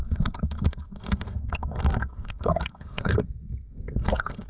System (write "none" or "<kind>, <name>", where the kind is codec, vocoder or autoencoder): codec, SNAC